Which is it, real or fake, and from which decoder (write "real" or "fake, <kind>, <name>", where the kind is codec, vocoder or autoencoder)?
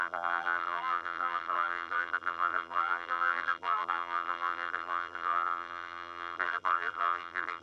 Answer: fake, vocoder, BigVGAN v2